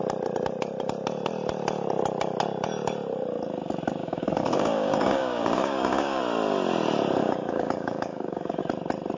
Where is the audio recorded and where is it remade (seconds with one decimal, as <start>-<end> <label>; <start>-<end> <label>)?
0.0-4.0 recorded; 4.0-6.2 remade; 6.2-7.2 recorded; 7.2-8.6 remade; 8.6-9.2 recorded